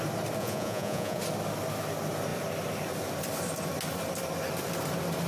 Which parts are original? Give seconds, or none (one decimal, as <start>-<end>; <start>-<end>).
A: 0.0-0.4; 1.2-5.3